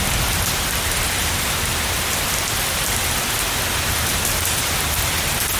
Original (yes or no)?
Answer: yes